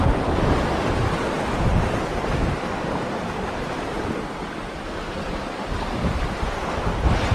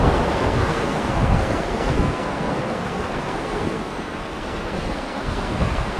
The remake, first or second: second